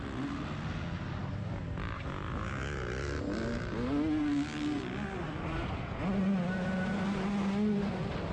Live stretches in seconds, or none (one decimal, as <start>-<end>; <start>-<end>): 0.0-8.3